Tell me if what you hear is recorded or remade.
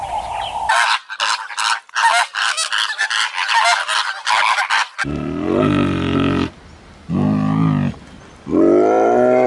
recorded